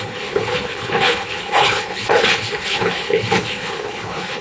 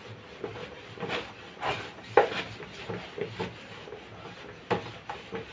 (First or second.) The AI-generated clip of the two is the first